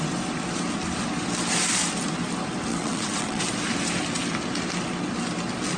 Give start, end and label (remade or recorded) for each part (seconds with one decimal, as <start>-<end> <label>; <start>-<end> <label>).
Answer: 0.0-2.7 recorded; 2.7-3.4 remade; 3.4-5.8 recorded